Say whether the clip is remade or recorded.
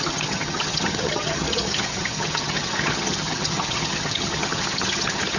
remade